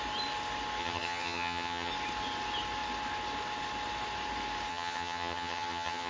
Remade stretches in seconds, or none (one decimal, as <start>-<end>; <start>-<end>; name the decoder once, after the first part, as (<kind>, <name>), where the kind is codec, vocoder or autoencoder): 0.8-1.9 (vocoder, HiFi-GAN); 4.7-6.1